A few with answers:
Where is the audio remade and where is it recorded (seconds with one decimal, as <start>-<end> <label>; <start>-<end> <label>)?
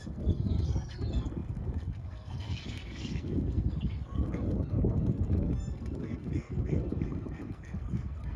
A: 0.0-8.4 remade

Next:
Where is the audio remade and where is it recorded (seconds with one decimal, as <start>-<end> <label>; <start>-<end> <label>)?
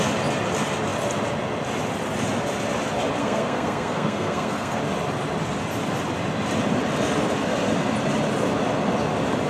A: 0.0-3.2 recorded; 3.2-4.8 remade; 4.8-9.5 recorded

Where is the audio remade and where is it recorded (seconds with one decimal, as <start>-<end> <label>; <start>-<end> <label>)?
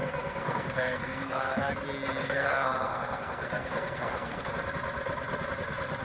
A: 0.0-1.7 remade; 1.7-2.2 recorded; 2.2-4.5 remade; 4.5-6.0 recorded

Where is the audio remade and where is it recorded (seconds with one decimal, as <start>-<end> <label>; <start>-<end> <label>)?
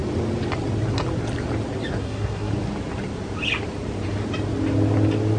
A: 0.0-2.0 recorded; 2.0-2.5 remade; 2.5-5.4 recorded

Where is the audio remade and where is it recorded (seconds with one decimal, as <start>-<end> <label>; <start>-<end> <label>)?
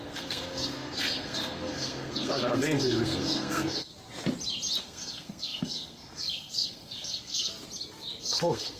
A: 0.0-3.9 remade; 3.9-4.8 recorded; 4.8-7.5 remade; 7.5-8.2 recorded; 8.2-8.8 remade